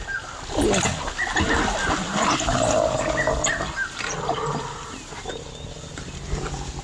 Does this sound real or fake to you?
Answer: real